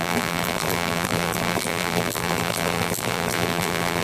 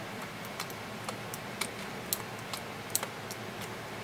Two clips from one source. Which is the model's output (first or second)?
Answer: first